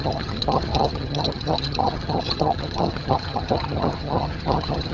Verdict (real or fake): fake